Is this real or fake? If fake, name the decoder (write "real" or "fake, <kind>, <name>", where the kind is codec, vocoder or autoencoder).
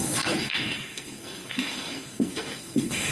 fake, codec, SNAC